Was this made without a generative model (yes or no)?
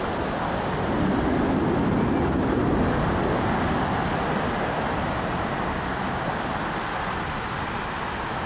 yes